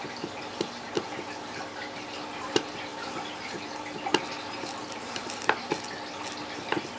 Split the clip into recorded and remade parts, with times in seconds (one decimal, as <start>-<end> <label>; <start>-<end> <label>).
0.0-2.9 recorded; 2.9-3.6 remade; 3.6-7.0 recorded